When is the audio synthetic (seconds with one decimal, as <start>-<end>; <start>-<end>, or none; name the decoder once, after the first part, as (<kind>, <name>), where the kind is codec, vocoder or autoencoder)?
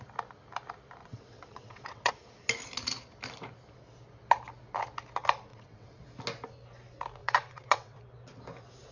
1.0-2.1 (vocoder, WaveNeXt); 5.5-6.0; 7.2-8.0